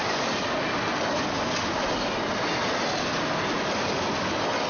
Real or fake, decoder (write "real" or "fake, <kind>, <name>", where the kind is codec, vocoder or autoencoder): real